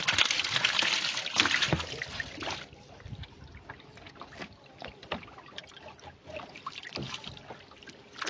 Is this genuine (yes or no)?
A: yes